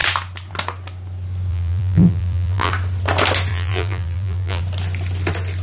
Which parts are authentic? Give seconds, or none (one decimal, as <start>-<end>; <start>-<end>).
0.0-1.5; 2.7-3.5; 4.6-5.6